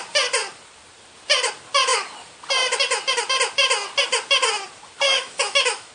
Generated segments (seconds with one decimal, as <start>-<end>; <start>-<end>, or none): 5.1-5.9